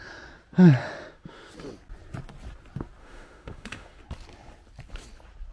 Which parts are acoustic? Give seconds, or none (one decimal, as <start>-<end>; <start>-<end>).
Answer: 0.0-0.8; 1.5-3.0; 4.0-5.5